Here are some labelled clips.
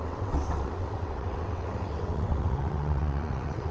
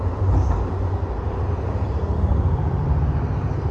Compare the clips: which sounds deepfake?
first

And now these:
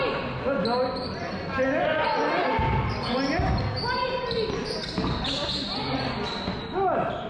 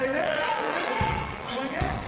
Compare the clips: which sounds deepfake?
second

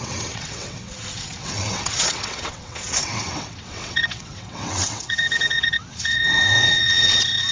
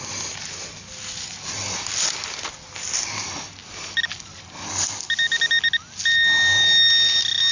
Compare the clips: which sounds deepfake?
first